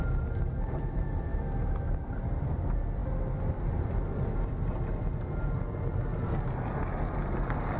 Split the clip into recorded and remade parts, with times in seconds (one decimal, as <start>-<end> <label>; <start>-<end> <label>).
0.0-7.8 recorded